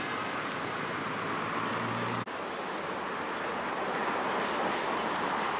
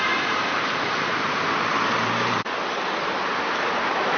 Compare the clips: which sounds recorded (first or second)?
first